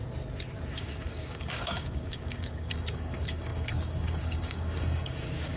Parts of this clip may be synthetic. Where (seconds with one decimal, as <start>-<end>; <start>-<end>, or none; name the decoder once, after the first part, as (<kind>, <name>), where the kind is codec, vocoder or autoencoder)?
0.7-5.6 (codec, DAC)